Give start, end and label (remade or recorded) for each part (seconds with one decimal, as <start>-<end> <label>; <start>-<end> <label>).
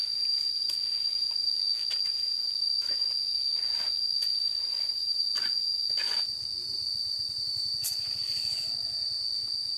0.0-2.4 recorded; 2.4-2.9 remade; 2.9-4.3 recorded; 4.3-5.3 remade; 5.3-6.6 recorded; 6.6-8.2 remade; 8.2-9.8 recorded